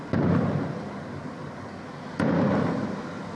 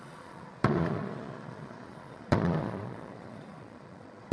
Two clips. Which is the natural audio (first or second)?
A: first